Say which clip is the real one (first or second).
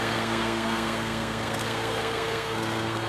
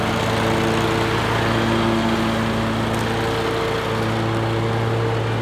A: second